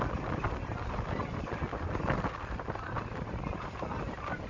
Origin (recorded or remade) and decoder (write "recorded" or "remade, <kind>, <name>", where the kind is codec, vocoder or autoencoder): recorded